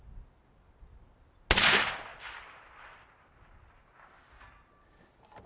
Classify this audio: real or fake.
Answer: real